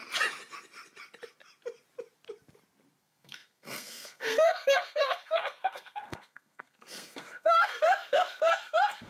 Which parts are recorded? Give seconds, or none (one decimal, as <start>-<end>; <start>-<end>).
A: 0.0-3.0